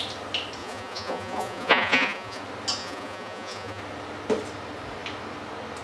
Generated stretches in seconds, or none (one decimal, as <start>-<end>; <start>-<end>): 0.6-2.4; 2.8-3.8